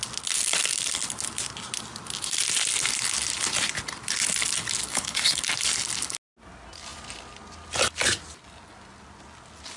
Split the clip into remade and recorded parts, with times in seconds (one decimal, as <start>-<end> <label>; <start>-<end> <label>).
0.0-4.9 recorded; 4.9-5.4 remade; 5.4-9.8 recorded